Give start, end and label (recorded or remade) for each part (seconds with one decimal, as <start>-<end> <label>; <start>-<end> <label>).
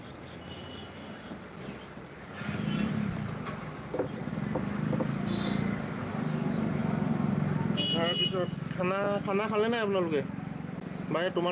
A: 0.0-11.5 recorded